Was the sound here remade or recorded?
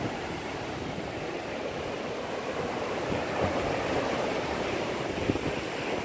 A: remade